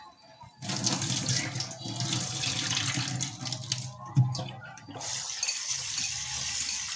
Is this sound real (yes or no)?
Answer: yes